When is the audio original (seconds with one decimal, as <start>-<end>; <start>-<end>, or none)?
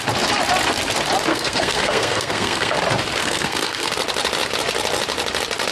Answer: 0.0-1.3; 2.8-3.2; 3.9-5.7